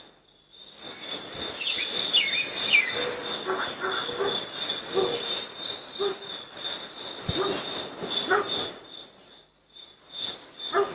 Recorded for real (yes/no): yes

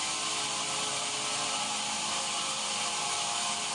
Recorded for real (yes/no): yes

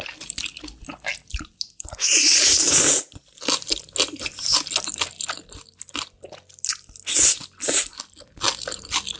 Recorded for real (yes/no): yes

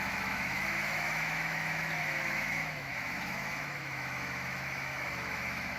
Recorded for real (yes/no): no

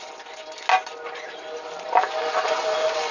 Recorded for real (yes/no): yes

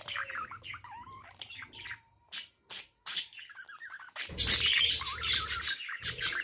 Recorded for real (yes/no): no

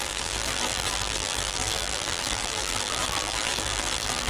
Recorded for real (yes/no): no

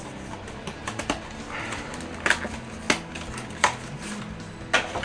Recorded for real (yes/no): yes